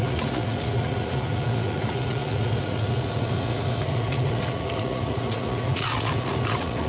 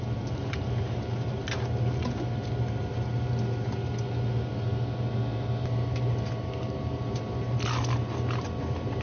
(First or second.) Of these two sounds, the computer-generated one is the first